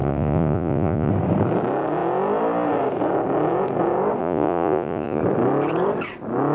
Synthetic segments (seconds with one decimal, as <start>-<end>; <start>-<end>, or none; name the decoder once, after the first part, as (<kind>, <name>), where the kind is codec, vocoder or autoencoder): 0.0-1.1 (vocoder, Vocos); 4.2-5.2